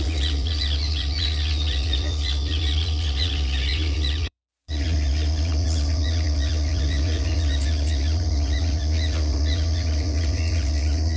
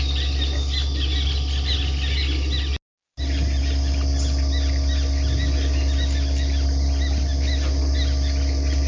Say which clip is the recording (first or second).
second